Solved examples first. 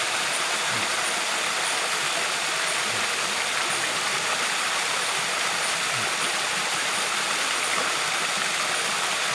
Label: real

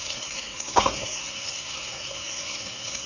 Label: fake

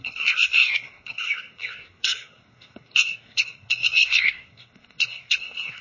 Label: fake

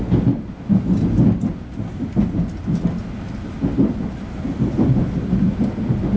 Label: real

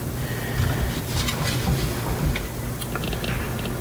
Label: real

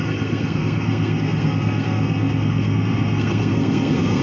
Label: fake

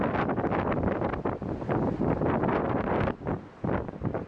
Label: real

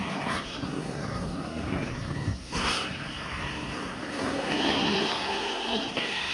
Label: fake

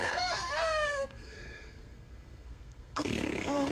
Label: fake